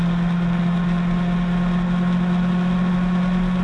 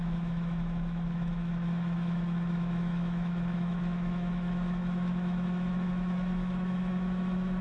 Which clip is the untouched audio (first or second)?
first